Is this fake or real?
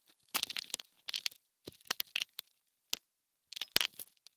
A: real